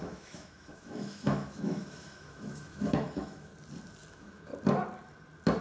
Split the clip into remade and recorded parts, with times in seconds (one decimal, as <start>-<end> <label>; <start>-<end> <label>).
0.0-3.5 remade; 3.5-4.1 recorded; 4.1-4.5 remade; 4.5-5.6 recorded